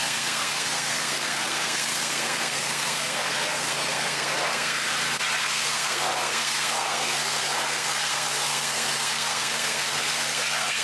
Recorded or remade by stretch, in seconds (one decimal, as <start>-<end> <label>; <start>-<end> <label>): 0.0-4.9 remade; 4.9-5.4 recorded; 5.4-10.8 remade